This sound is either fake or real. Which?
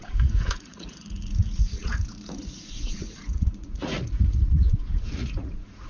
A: fake